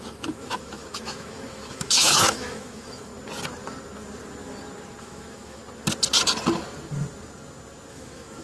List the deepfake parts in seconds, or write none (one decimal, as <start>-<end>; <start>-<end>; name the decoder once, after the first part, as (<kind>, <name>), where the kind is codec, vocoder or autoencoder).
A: 0.0-3.1 (autoencoder, DAC-VAE); 5.0-5.6; 7.9-8.4